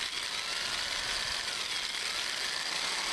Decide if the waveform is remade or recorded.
recorded